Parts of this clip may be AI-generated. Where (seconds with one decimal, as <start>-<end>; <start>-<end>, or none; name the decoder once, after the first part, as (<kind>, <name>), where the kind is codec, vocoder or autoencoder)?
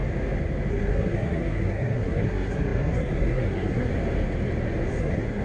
0.7-3.9 (codec, SNAC); 5.0-5.4